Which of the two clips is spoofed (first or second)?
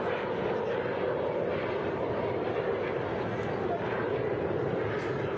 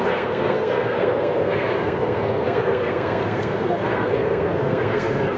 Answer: second